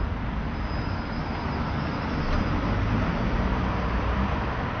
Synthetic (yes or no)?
no